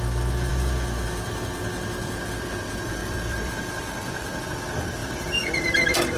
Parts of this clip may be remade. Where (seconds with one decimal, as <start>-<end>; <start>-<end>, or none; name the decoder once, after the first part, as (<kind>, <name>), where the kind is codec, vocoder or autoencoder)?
3.0-4.4 (vocoder, BigVGAN v2); 5.0-6.2